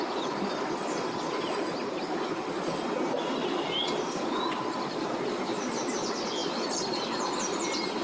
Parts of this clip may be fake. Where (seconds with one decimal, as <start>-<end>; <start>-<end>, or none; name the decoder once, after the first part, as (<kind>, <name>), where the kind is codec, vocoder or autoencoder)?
none